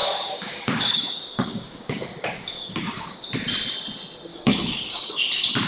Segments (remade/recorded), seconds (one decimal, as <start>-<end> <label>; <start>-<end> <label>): 0.0-3.1 remade; 3.1-4.3 recorded; 4.3-5.2 remade; 5.2-5.7 recorded